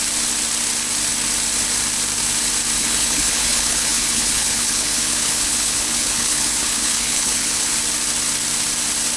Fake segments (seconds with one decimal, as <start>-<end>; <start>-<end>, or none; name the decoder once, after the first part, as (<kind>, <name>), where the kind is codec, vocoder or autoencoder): 2.8-7.7 (codec, HILCodec)